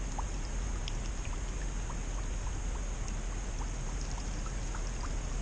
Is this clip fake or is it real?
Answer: real